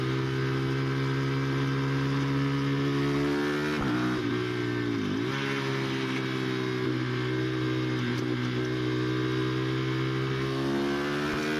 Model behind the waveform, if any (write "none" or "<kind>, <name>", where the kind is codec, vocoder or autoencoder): none